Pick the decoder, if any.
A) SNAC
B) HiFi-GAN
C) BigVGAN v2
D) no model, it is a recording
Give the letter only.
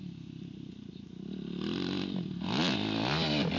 D